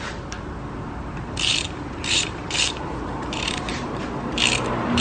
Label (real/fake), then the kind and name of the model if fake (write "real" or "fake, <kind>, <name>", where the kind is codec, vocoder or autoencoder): fake, vocoder, BigVGAN v2